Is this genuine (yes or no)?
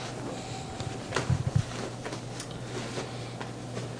yes